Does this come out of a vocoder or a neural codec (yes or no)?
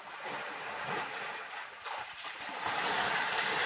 yes